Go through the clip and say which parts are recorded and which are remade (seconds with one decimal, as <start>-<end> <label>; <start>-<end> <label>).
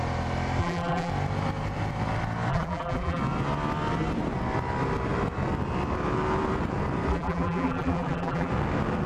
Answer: 0.0-0.6 recorded; 0.6-1.1 remade; 1.1-2.5 recorded; 2.5-3.2 remade; 3.2-7.1 recorded; 7.1-8.5 remade; 8.5-9.1 recorded